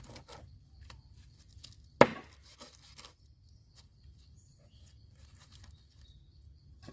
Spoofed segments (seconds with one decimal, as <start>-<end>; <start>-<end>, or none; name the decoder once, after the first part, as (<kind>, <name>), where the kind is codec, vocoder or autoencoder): none